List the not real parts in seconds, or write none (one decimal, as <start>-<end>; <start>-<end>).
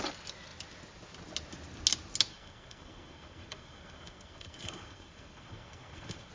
2.3-6.3